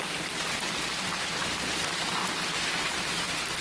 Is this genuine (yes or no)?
no